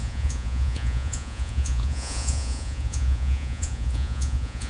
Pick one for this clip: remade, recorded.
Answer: remade